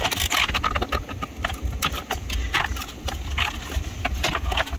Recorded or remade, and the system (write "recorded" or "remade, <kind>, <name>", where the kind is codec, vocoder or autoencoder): recorded